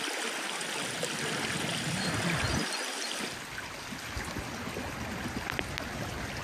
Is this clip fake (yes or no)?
no